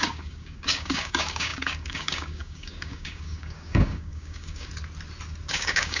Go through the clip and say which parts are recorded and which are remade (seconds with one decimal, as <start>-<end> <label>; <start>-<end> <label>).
0.0-4.7 remade; 4.7-5.5 recorded; 5.5-6.0 remade